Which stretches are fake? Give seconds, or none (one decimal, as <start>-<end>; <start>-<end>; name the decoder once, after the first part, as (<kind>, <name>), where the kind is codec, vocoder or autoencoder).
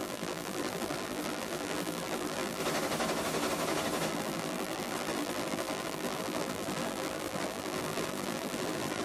0.0-2.6 (vocoder, BigVGAN v2); 4.1-9.0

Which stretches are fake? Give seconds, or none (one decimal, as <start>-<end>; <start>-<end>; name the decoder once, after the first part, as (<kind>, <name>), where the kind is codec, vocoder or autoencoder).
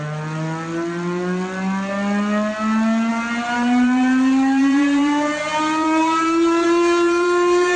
3.1-7.8 (vocoder, BigVGAN v2)